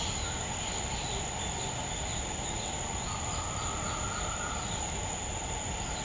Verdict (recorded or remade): recorded